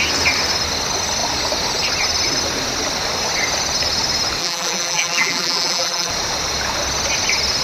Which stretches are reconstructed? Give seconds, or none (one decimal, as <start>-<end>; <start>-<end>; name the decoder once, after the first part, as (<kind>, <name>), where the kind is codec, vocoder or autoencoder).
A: 4.4-6.1 (vocoder, BigVGAN v2)